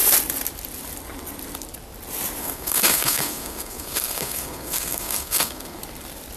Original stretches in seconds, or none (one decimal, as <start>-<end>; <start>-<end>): 0.0-2.4; 5.8-6.4